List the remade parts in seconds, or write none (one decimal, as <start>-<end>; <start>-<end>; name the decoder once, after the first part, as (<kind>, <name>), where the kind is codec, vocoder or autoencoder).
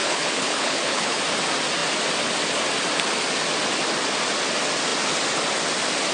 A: 0.0-1.2 (codec, HILCodec)